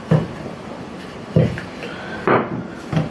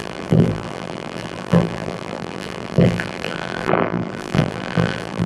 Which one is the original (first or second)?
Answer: first